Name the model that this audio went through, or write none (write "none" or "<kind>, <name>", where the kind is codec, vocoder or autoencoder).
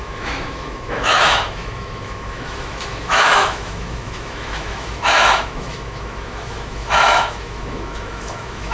autoencoder, DAC-VAE